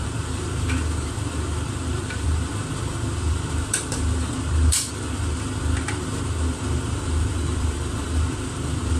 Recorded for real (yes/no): no